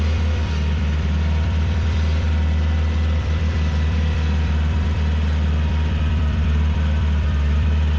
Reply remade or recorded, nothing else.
remade